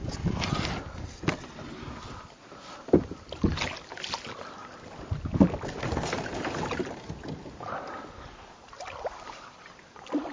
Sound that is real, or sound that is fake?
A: real